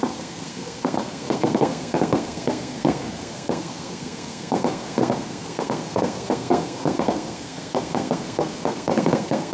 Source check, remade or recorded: remade